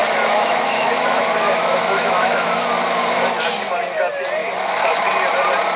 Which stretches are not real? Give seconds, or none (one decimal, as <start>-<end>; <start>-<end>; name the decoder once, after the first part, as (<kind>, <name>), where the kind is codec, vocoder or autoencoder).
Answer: 0.0-2.7 (autoencoder, DAC-VAE); 4.4-5.1